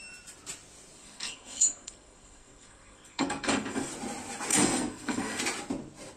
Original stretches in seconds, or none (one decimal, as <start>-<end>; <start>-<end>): 0.0-1.0; 3.9-4.5; 5.4-6.2